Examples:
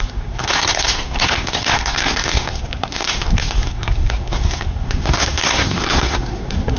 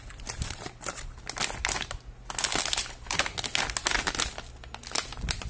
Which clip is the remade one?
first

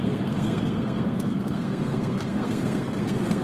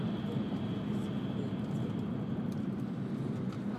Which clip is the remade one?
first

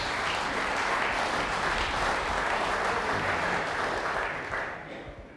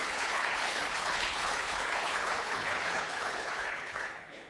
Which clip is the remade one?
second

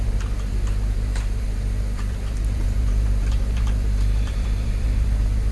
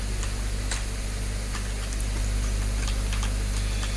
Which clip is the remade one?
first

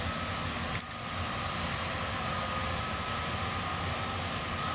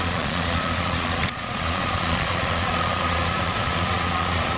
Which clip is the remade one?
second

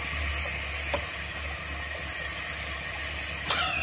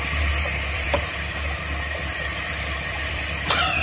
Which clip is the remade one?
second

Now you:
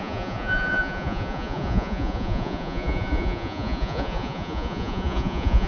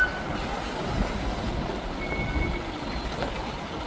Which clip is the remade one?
first